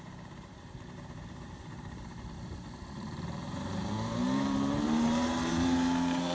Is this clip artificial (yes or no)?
yes